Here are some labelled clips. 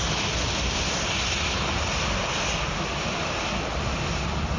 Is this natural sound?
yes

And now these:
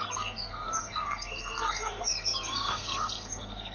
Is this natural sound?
no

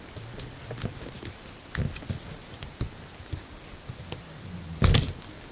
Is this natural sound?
yes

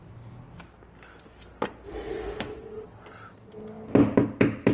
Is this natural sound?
yes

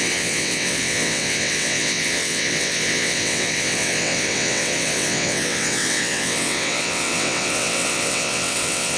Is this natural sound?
no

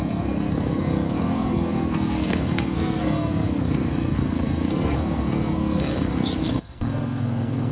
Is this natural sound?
no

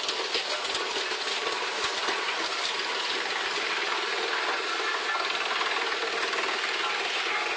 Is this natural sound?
yes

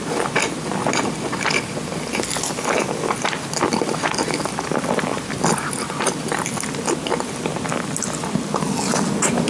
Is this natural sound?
yes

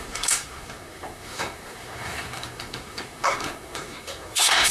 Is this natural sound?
no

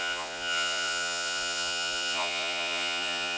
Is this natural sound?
no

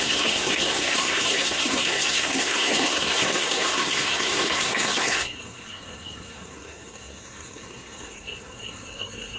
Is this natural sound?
no